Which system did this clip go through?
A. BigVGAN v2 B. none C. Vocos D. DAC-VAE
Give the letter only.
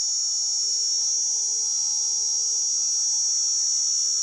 B